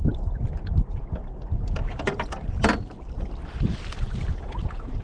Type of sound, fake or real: real